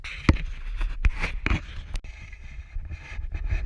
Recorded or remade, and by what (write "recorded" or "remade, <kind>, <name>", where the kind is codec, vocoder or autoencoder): recorded